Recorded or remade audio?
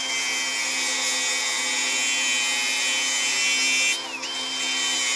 recorded